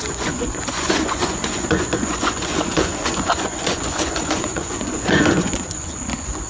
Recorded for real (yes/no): no